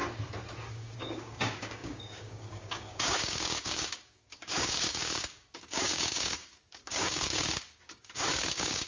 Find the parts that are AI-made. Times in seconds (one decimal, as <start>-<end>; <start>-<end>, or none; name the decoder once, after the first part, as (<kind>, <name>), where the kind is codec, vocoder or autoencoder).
0.7-8.9 (codec, DAC)